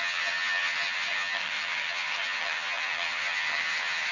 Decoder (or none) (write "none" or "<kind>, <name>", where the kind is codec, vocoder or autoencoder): vocoder, HiFi-GAN